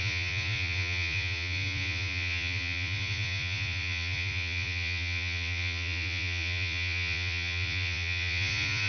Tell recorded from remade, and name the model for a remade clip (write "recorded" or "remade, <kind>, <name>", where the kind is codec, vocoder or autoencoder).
remade, vocoder, Vocos